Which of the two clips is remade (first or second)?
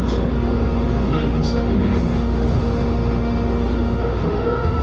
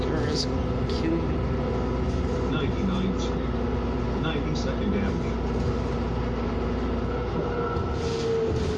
first